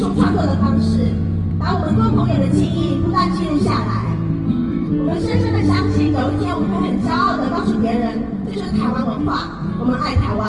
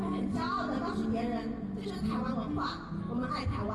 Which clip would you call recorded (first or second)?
second